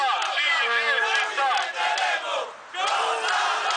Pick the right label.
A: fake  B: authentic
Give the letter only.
A